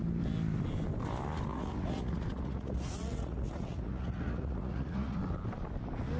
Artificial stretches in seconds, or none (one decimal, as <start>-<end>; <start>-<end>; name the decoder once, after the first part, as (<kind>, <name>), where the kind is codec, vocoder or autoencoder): 1.5-5.2 (vocoder, Vocos)